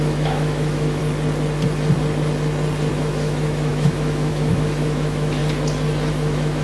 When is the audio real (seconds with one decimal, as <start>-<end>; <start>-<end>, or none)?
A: 1.0-2.9; 5.4-6.1